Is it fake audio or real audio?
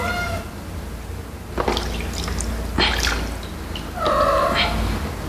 real